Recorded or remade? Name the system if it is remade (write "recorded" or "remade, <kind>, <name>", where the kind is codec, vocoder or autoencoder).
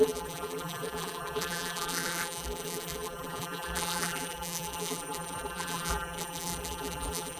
remade, vocoder, BigVGAN v2